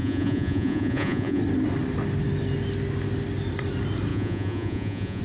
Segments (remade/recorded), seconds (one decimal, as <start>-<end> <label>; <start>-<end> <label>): 0.0-1.4 remade; 1.4-4.1 recorded; 4.1-5.2 remade